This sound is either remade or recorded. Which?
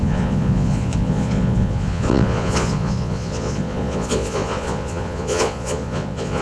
remade